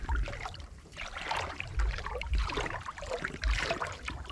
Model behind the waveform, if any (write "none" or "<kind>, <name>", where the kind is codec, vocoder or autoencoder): vocoder, BigVGAN v2